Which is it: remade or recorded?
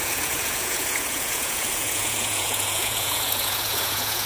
remade